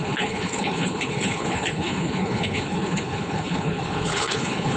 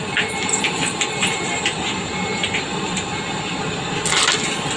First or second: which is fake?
first